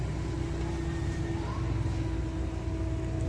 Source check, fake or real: real